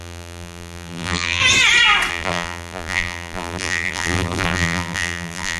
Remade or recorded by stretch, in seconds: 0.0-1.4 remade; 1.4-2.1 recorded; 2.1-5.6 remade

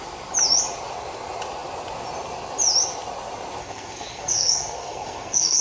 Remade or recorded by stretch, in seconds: 0.0-3.6 recorded; 3.6-5.6 remade

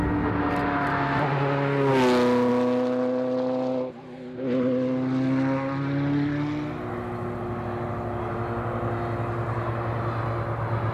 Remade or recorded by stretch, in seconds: 0.0-10.9 recorded

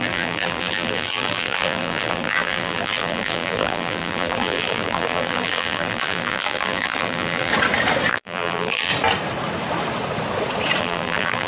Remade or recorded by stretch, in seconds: 0.0-7.5 remade; 7.5-8.1 recorded; 8.1-8.9 remade; 8.9-10.8 recorded; 10.8-11.5 remade

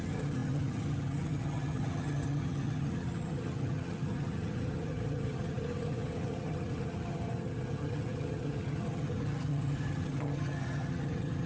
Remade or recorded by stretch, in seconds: 0.0-11.5 remade

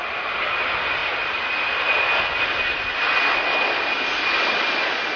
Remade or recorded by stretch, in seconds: 0.0-5.2 recorded

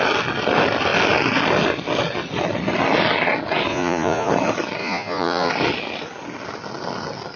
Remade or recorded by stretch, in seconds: 0.0-3.7 recorded; 3.7-4.3 remade; 4.3-4.8 recorded; 4.8-5.5 remade; 5.5-7.4 recorded